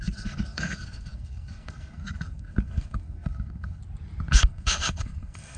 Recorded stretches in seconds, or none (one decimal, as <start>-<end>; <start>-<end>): 3.8-4.3

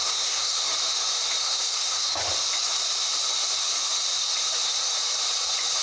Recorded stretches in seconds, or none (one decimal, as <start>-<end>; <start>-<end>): 0.7-1.4; 2.2-5.8